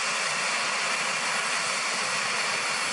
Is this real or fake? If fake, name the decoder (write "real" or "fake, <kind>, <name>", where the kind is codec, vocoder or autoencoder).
real